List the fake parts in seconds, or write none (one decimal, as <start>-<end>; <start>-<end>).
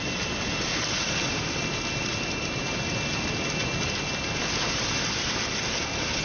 none